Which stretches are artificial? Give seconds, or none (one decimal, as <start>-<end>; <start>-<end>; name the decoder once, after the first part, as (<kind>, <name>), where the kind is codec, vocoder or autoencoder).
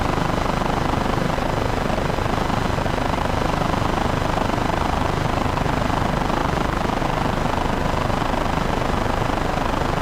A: none